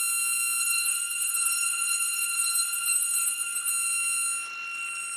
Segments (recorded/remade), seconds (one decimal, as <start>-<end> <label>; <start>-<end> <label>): 0.0-0.6 recorded; 0.6-3.7 remade; 3.7-5.2 recorded